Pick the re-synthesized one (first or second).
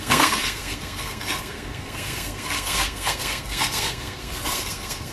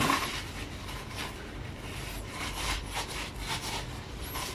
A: first